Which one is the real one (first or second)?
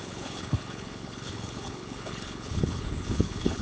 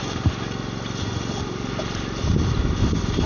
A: second